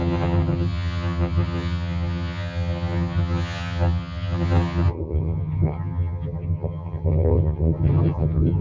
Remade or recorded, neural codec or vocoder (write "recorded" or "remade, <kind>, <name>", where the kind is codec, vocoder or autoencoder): remade, vocoder, HiFi-GAN